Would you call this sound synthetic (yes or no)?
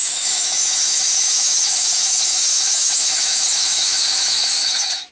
yes